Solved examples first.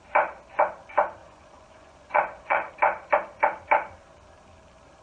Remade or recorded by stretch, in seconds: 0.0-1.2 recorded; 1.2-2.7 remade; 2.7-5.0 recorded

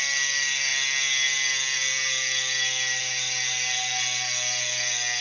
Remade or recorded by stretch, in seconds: 0.0-5.2 recorded

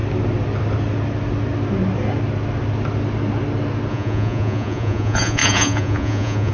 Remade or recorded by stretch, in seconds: 0.0-3.9 recorded; 3.9-6.5 remade

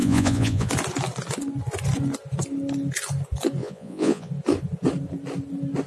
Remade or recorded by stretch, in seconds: 0.0-0.7 remade; 0.7-3.6 recorded; 3.6-4.3 remade; 4.3-5.9 recorded

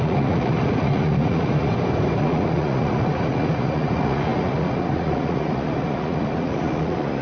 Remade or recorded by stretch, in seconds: 0.0-1.7 remade; 1.7-2.2 recorded; 2.2-7.2 remade

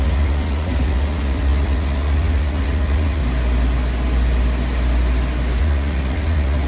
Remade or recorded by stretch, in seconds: 0.0-3.2 remade; 3.2-5.6 recorded; 5.6-6.7 remade

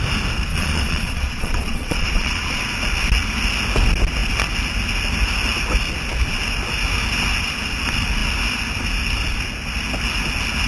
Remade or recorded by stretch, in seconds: 0.0-0.5 recorded; 0.5-2.6 remade; 2.6-10.7 recorded

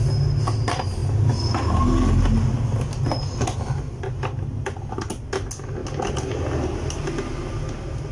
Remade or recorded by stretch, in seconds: 0.0-8.1 recorded